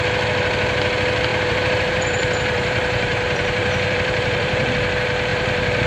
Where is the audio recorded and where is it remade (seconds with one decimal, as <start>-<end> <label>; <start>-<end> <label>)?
0.0-1.3 recorded; 1.3-4.7 remade; 4.7-5.3 recorded; 5.3-5.9 remade